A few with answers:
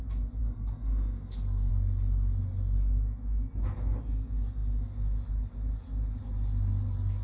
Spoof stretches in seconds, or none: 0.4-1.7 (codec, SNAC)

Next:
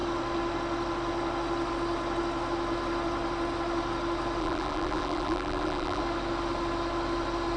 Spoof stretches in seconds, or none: 4.4-6.0 (vocoder, BigVGAN v2)

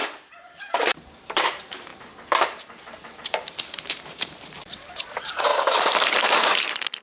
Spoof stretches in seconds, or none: 0.0-1.9 (vocoder, BigVGAN v2); 2.4-7.0

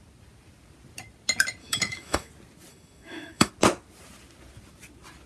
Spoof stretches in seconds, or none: 1.6-2.3 (autoencoder, DAC-VAE); 2.7-3.5